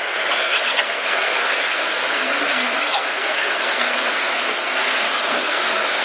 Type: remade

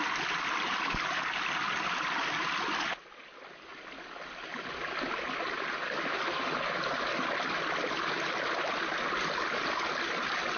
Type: recorded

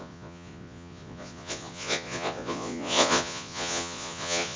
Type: remade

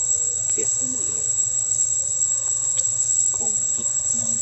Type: remade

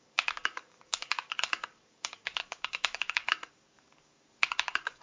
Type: remade